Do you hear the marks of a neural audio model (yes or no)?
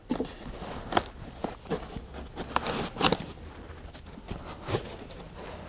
no